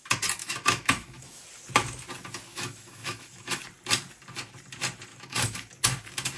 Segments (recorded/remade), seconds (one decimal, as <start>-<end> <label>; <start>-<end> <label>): 0.0-0.4 recorded; 0.4-1.4 remade; 1.4-2.5 recorded; 2.5-3.6 remade; 3.6-5.1 recorded; 5.1-5.7 remade; 5.7-6.4 recorded